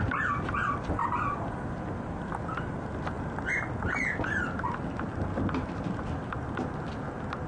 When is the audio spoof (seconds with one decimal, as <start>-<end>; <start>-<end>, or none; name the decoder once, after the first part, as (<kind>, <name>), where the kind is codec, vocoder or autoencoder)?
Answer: none